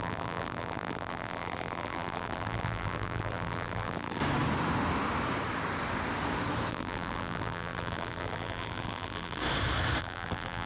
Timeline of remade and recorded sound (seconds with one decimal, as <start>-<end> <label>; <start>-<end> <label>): 0.0-4.2 remade; 4.2-6.7 recorded; 6.7-9.4 remade; 9.4-10.0 recorded; 10.0-10.7 remade